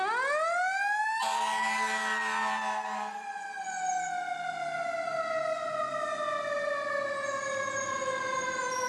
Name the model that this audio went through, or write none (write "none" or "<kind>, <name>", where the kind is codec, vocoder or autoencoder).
none